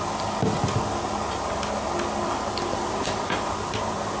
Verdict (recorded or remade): recorded